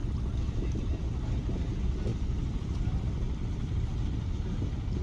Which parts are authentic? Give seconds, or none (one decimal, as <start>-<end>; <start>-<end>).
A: 0.0-5.0